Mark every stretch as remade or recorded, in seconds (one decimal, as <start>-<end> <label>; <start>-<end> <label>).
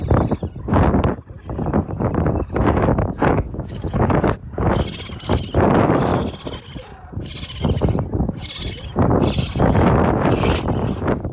0.0-2.9 recorded; 2.9-4.5 remade; 4.5-11.3 recorded